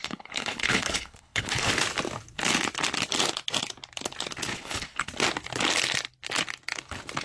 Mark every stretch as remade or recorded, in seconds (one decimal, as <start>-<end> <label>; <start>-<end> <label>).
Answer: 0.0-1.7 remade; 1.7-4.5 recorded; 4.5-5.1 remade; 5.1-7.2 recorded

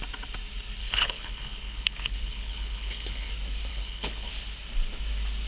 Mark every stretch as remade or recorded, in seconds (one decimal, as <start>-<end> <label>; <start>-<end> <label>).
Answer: 0.0-0.8 recorded; 0.8-3.3 remade; 3.3-3.7 recorded; 3.7-4.3 remade; 4.3-5.5 recorded

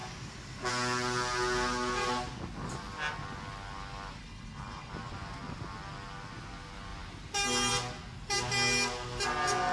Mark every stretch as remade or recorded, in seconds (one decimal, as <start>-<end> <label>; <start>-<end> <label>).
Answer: 0.0-4.2 recorded; 4.2-4.9 remade; 4.9-9.7 recorded

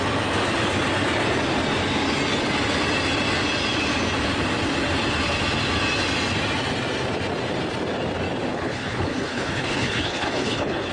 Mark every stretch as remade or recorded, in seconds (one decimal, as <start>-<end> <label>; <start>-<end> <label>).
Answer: 0.0-8.5 recorded; 8.5-10.9 remade

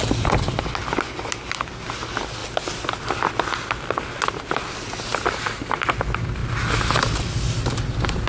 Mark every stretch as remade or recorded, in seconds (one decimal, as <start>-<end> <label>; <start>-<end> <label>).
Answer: 0.0-8.3 recorded

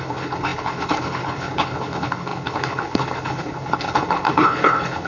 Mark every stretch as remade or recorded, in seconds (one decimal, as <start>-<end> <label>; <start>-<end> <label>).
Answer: 0.0-5.1 remade

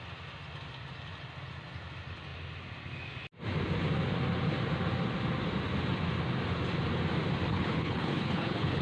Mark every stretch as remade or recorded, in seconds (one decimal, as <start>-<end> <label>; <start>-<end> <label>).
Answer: 0.0-7.5 recorded; 7.5-8.8 remade